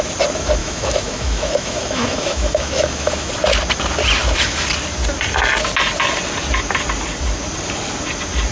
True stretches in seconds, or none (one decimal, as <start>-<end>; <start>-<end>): 0.0-0.6; 3.3-8.5